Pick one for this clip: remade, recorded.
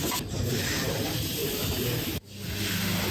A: recorded